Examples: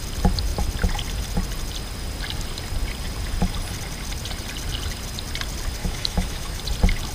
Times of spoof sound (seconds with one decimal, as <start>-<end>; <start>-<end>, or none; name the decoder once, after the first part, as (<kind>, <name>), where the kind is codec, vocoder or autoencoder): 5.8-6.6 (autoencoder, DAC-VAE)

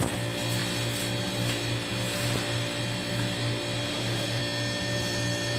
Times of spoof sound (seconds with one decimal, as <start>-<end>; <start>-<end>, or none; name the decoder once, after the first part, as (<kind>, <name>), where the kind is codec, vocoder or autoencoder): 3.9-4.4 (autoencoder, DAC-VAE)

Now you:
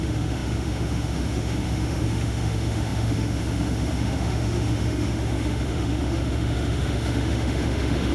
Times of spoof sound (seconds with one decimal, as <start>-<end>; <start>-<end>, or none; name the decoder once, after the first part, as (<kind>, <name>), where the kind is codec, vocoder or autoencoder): 0.0-8.1 (autoencoder, DAC-VAE)

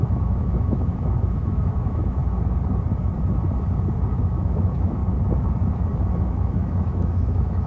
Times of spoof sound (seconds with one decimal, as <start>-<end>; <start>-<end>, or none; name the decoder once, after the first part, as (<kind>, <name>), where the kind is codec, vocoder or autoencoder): 0.0-2.2 (autoencoder, DAC-VAE); 4.1-5.0; 6.2-7.7